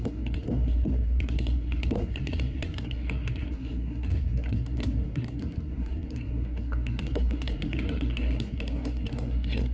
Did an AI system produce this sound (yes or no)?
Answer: yes